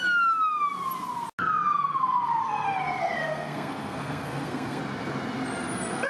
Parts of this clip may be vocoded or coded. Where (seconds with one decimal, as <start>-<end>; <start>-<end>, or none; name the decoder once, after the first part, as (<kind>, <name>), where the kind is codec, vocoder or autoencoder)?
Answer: 1.7-4.8 (codec, SNAC)